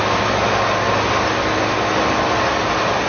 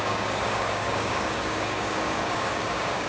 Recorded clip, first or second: first